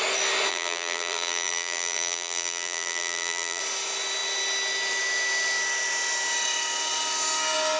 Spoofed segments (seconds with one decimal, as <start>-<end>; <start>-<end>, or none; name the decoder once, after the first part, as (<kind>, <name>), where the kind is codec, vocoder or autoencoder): 0.5-3.6 (vocoder, BigVGAN v2)